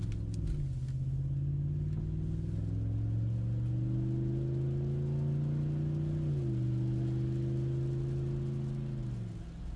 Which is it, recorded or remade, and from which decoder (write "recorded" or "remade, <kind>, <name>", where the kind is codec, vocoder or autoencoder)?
recorded